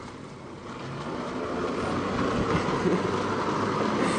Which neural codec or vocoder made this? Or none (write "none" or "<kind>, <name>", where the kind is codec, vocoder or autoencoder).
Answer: none